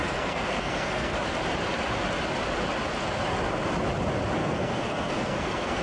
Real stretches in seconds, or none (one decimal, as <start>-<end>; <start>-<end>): 1.2-4.4